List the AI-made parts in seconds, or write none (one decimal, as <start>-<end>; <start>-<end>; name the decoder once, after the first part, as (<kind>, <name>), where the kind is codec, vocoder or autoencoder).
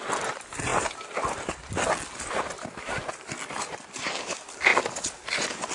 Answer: none